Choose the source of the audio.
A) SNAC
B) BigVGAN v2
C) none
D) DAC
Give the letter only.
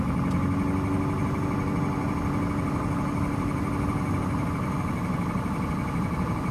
C